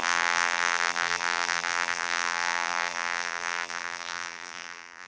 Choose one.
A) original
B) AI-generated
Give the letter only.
B